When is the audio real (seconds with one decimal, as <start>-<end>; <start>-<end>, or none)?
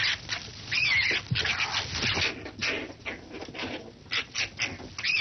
0.0-2.6; 3.8-5.2